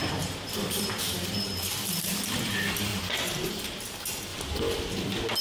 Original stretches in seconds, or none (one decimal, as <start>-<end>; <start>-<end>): 2.1-2.9; 3.5-5.4